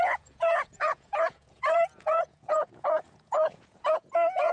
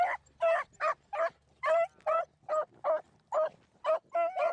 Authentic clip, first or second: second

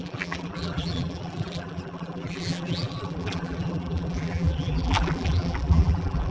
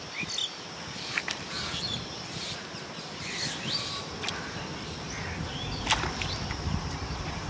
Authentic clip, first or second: second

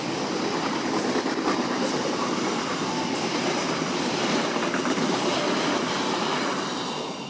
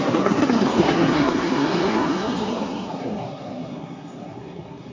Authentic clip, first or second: first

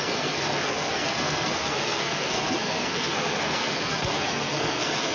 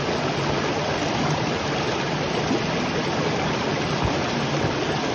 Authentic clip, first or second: second